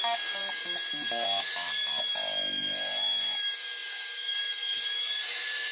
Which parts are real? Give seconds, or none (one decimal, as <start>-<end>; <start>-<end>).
none